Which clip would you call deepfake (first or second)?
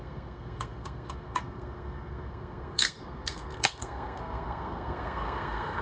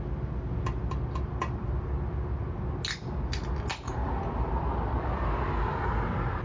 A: first